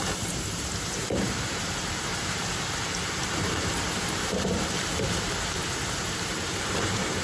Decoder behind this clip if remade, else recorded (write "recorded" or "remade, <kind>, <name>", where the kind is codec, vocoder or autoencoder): remade, vocoder, BigVGAN v2